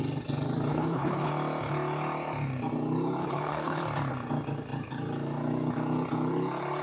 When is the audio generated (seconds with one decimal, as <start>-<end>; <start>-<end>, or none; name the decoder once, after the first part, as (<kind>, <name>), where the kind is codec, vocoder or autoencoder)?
0.7-1.3 (codec, HILCodec); 3.2-3.8